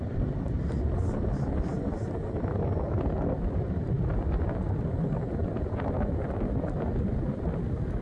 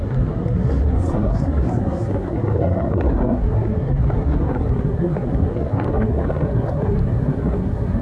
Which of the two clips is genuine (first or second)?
first